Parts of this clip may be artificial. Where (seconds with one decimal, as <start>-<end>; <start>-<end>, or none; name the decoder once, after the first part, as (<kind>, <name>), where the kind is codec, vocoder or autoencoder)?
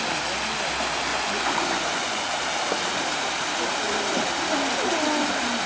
1.1-2.2 (vocoder, Vocos)